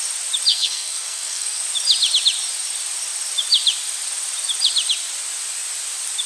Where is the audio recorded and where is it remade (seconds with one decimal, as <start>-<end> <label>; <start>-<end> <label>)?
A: 0.0-0.5 recorded; 0.5-1.6 remade; 1.6-6.3 recorded

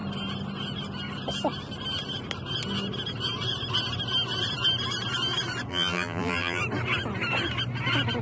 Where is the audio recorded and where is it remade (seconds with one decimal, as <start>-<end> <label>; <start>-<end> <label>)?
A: 0.0-5.7 recorded; 5.7-6.6 remade; 6.6-8.2 recorded

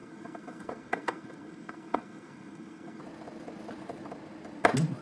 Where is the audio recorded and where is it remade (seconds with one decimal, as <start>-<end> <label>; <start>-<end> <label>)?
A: 0.0-3.0 remade; 3.0-5.0 recorded

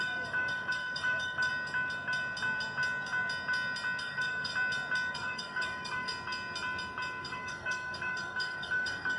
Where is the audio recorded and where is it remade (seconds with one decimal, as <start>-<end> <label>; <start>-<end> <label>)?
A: 0.0-1.5 remade; 1.5-4.0 recorded; 4.0-4.5 remade; 4.5-5.1 recorded; 5.1-6.1 remade; 6.1-7.2 recorded; 7.2-9.2 remade

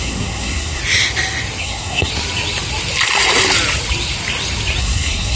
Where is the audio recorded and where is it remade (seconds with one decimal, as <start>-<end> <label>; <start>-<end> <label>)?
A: 0.0-0.8 remade; 0.8-1.6 recorded; 1.6-2.1 remade; 2.1-4.8 recorded; 4.8-5.4 remade